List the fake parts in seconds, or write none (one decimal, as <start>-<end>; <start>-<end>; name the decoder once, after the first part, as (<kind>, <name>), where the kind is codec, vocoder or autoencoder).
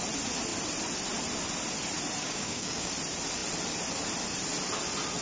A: 2.2-2.9 (codec, DAC)